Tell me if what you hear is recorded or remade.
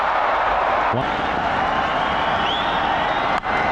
recorded